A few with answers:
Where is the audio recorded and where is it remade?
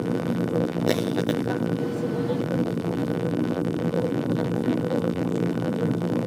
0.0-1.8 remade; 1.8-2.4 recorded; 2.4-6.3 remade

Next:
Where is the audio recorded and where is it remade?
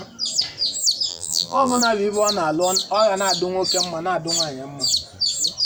0.0-1.1 recorded; 1.1-1.8 remade; 1.8-5.6 recorded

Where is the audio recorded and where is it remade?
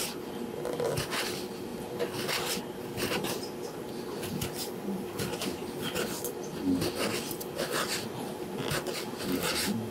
0.0-1.7 recorded; 1.7-2.6 remade; 2.6-9.9 recorded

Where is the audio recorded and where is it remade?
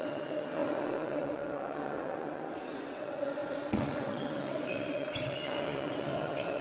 0.0-6.6 remade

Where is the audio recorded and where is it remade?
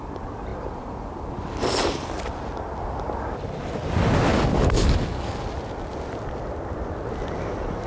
0.0-4.3 recorded; 4.3-5.4 remade; 5.4-7.9 recorded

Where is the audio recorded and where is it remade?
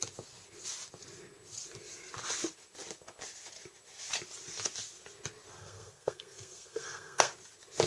0.0-5.6 recorded; 5.6-7.3 remade; 7.3-7.9 recorded